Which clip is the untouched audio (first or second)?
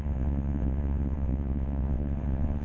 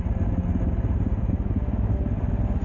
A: second